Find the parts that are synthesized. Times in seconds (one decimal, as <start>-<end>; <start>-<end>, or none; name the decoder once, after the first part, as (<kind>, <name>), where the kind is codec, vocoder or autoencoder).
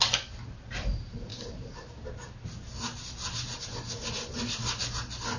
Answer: none